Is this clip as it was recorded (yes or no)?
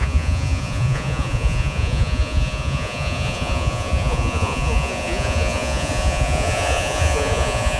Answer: no